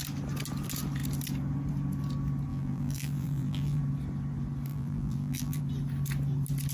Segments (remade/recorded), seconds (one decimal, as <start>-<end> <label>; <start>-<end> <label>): 0.0-2.5 recorded; 2.5-3.8 remade; 3.8-4.7 recorded; 4.7-5.6 remade; 5.6-6.7 recorded